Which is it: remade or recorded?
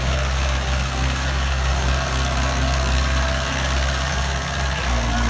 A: remade